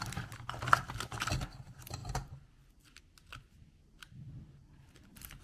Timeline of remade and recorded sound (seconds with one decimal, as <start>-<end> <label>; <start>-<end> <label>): 0.0-5.4 recorded